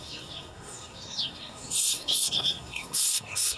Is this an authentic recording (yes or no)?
no